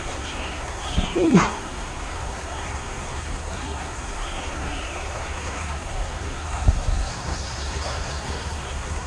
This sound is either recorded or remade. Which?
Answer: remade